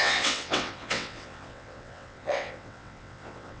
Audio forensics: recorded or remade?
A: remade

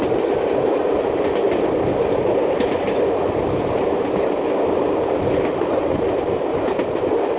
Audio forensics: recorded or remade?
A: recorded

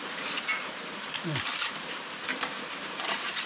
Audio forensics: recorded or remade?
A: remade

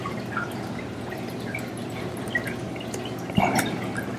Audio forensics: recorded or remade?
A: recorded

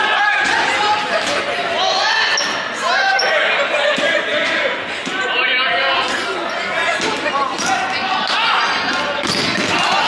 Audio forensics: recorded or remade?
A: recorded